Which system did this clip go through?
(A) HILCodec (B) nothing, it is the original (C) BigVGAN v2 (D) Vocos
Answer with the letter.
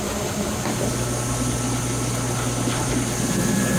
B